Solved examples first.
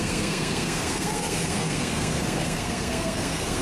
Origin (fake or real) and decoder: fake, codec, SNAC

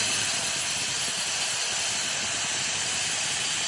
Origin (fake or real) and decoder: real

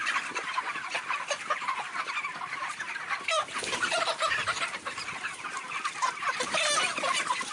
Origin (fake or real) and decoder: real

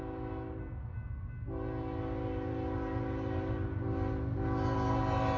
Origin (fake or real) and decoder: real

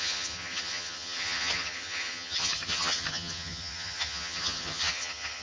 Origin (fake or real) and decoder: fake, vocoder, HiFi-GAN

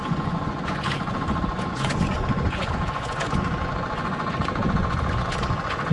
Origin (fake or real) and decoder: fake, vocoder, Vocos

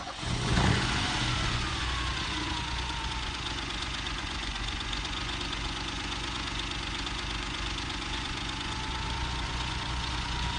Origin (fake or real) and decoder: fake, vocoder, Vocos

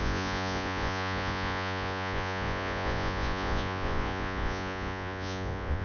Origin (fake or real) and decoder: fake, vocoder, Vocos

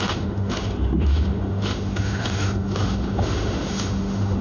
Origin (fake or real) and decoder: fake, autoencoder, DAC-VAE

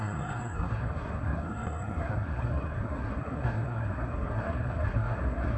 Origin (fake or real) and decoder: fake, codec, SNAC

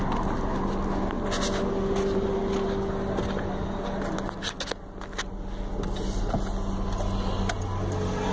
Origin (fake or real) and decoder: real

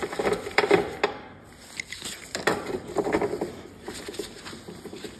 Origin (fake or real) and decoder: real